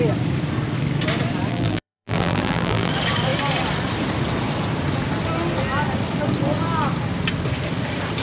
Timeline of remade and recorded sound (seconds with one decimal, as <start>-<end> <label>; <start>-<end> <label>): 0.0-1.5 recorded; 1.5-2.9 remade; 2.9-8.2 recorded